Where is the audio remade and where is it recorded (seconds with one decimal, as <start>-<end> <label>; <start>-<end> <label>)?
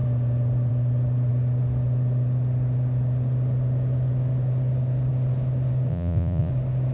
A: 0.0-5.9 recorded; 5.9-6.5 remade; 6.5-6.9 recorded